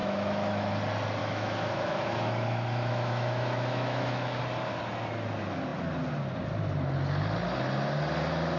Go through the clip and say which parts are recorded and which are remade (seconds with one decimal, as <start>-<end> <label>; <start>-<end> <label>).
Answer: 0.0-0.7 remade; 0.7-1.2 recorded; 1.2-4.4 remade; 4.4-8.6 recorded